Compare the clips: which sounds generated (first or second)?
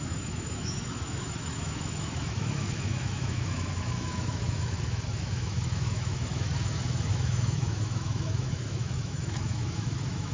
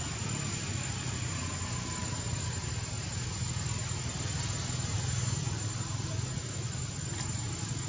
first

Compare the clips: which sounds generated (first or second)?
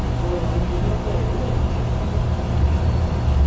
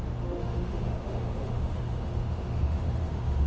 second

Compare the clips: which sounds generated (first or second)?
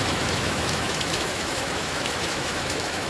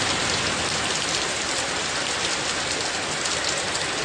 first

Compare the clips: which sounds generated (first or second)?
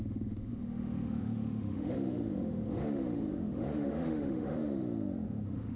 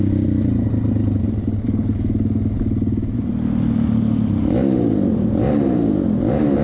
first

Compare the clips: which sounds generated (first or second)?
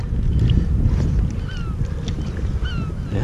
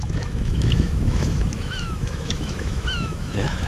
second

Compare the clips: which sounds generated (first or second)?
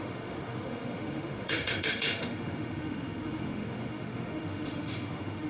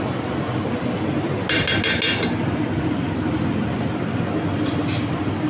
first